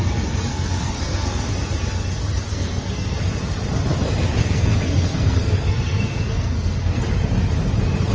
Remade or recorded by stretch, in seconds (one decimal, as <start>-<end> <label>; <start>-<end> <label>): 0.0-0.5 recorded; 0.5-1.5 remade; 1.5-2.5 recorded; 2.5-3.3 remade; 3.3-4.4 recorded; 4.4-7.0 remade; 7.0-8.1 recorded